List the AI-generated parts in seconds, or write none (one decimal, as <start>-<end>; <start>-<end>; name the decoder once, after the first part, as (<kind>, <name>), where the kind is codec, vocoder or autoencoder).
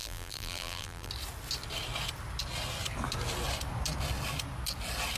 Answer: 0.0-1.1 (vocoder, BigVGAN v2)